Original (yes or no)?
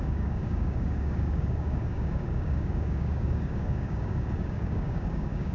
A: no